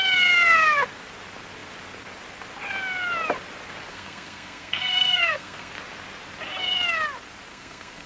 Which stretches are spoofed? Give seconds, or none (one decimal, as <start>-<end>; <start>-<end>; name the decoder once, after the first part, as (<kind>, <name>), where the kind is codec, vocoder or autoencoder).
3.9-5.7 (codec, SNAC); 7.5-8.1